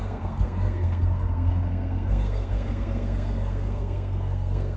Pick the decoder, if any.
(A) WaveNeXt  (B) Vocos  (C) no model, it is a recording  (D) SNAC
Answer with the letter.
D